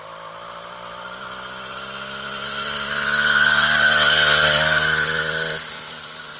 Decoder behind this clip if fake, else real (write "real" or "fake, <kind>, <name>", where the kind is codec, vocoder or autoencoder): real